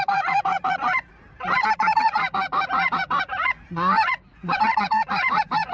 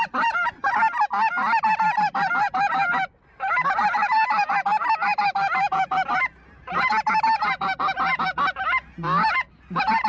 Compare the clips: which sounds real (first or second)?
second